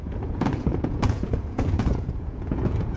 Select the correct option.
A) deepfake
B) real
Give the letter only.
A